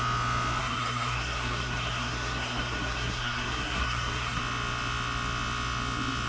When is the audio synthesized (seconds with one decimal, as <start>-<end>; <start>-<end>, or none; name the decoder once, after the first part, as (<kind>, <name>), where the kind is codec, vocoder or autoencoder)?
0.6-4.4 (codec, SNAC)